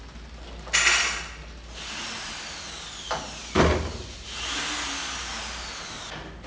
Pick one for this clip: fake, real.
real